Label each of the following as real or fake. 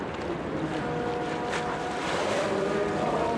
real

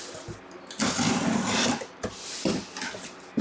real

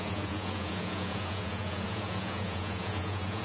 fake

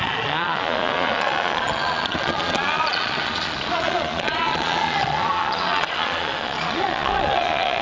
fake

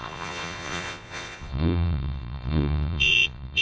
fake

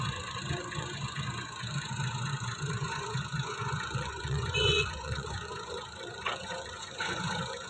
fake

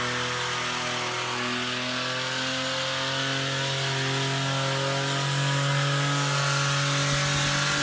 real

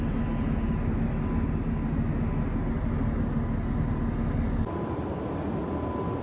real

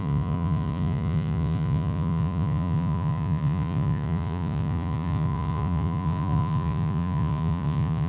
fake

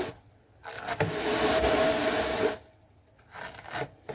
real